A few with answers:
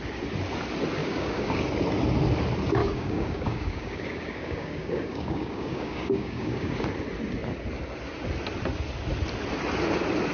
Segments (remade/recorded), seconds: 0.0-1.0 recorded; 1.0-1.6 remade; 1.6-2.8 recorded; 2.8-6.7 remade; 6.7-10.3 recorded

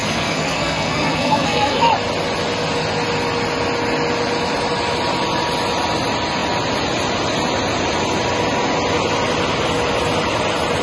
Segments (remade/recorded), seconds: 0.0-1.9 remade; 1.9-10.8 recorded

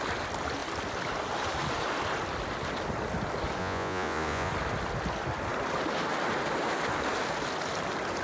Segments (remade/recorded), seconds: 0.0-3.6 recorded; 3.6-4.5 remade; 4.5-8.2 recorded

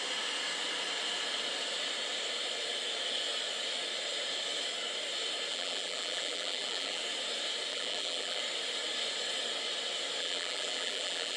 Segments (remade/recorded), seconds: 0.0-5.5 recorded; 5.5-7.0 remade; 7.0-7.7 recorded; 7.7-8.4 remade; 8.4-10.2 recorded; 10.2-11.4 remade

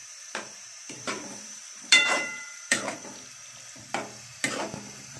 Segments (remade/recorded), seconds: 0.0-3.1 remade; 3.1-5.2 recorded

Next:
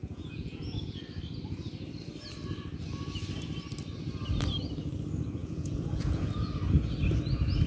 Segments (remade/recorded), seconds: 0.0-1.0 remade; 1.0-5.4 recorded; 5.4-6.5 remade; 6.5-7.7 recorded

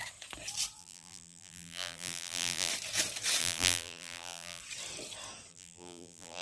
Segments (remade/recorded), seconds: 0.0-0.8 recorded; 0.8-2.7 remade; 2.7-3.4 recorded; 3.4-4.6 remade; 4.6-5.5 recorded; 5.5-6.4 remade